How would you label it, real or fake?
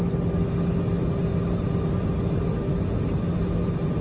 real